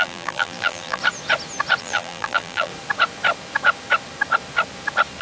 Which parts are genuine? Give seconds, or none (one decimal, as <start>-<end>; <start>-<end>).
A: 1.0-1.8; 2.7-5.2